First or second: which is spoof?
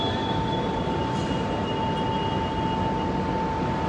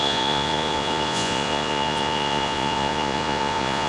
second